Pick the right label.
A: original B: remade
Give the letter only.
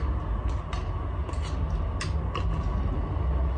A